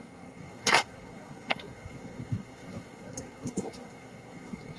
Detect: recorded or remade remade